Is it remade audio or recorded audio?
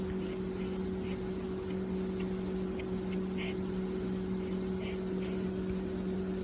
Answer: recorded